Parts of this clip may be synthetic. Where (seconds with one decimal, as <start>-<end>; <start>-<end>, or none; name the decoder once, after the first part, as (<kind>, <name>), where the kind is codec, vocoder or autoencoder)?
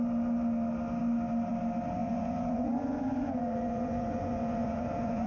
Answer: 2.0-5.3 (vocoder, Vocos)